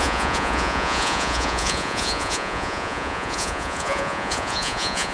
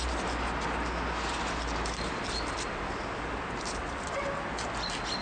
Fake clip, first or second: first